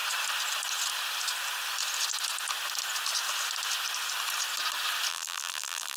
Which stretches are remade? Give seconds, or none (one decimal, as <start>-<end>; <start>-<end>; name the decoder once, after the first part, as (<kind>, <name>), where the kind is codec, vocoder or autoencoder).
5.1-6.0 (vocoder, BigVGAN v2)